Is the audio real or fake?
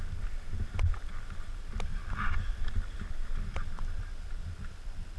real